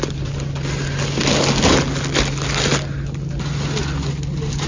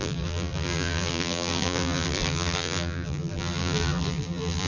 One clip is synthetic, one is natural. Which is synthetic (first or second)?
second